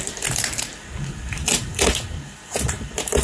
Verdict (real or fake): fake